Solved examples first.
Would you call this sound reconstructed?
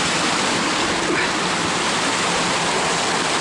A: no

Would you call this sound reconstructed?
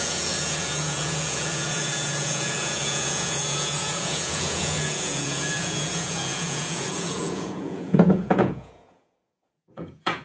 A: yes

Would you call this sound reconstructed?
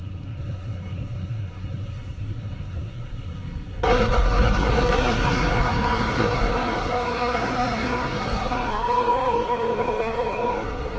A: yes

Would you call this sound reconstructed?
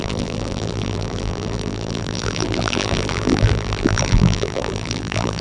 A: yes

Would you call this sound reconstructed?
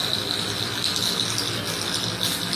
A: no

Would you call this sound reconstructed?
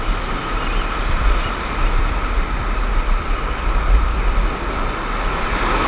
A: no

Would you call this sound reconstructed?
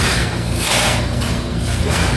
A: yes